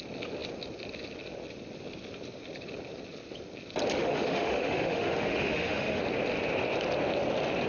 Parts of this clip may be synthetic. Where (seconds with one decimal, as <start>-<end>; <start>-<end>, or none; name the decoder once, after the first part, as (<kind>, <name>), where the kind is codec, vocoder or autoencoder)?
3.9-6.0 (autoencoder, DAC-VAE)